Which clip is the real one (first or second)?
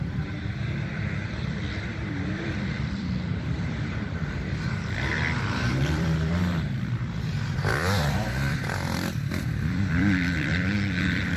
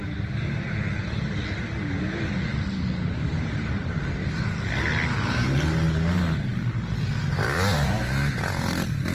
second